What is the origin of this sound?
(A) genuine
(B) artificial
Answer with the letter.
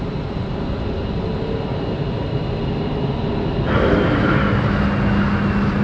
A